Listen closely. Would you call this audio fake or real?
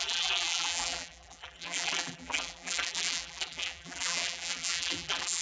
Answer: fake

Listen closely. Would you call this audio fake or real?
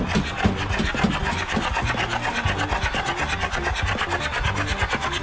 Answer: real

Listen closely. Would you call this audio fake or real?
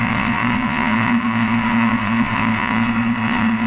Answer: fake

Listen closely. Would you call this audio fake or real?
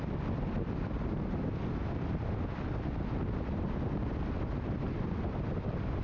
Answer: real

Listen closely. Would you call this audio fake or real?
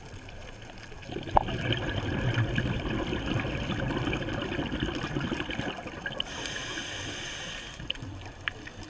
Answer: fake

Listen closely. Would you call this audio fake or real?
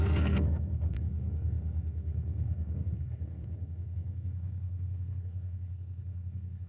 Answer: fake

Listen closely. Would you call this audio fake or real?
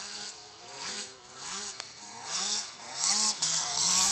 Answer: fake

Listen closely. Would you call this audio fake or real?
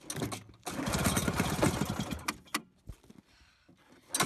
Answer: real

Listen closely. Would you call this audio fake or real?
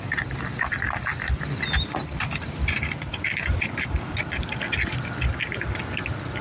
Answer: fake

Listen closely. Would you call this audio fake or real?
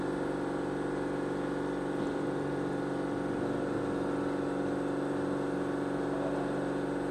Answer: real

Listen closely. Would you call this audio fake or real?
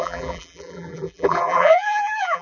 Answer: fake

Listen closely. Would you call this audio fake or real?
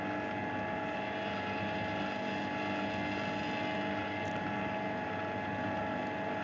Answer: real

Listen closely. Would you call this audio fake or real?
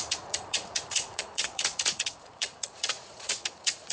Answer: fake